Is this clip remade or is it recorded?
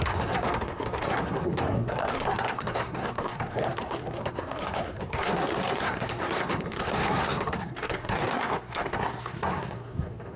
remade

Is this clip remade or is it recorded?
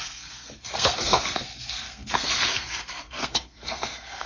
remade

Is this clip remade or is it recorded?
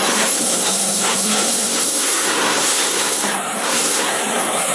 remade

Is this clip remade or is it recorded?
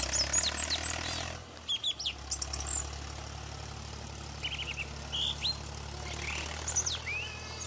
recorded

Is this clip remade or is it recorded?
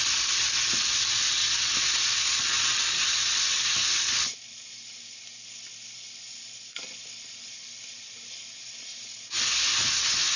recorded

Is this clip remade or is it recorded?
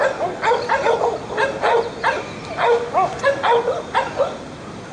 recorded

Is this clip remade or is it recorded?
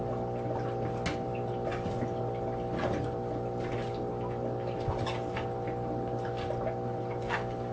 recorded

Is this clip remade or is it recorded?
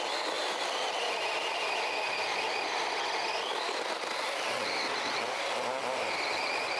recorded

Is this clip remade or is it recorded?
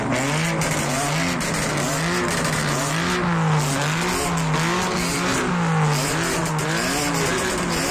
recorded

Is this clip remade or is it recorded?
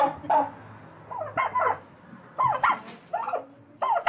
recorded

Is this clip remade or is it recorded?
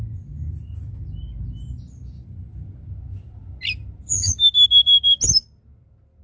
recorded